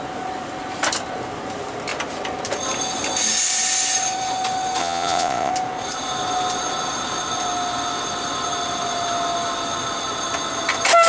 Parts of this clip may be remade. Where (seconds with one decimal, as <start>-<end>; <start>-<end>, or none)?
4.8-5.5